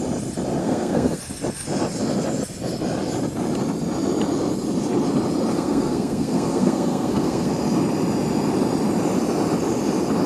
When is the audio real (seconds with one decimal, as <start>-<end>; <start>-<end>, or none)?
0.0-0.6; 1.2-5.5; 7.5-10.3